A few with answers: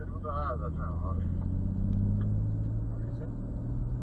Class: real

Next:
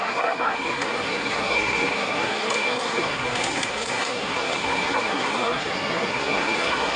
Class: fake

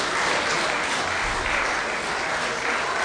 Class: real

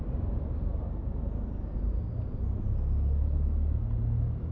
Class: real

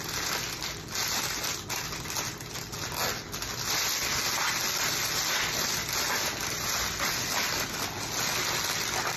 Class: real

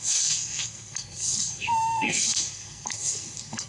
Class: fake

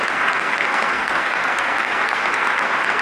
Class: fake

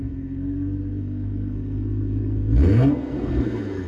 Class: fake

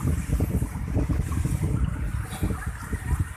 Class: real